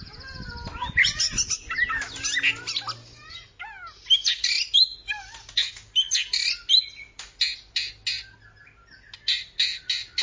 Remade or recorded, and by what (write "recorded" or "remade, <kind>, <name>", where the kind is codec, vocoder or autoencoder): recorded